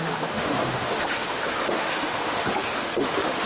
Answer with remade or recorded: remade